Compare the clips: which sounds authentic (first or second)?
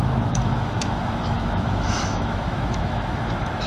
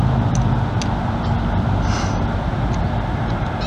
second